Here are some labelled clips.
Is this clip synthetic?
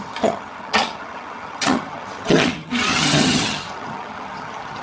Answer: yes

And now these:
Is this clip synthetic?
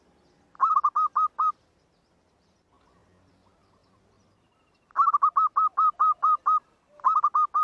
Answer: no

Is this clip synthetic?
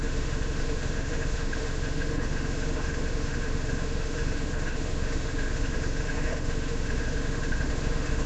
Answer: yes